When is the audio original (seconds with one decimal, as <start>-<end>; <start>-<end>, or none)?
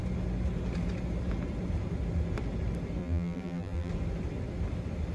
0.0-3.0; 3.9-5.1